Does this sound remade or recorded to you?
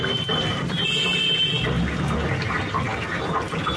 recorded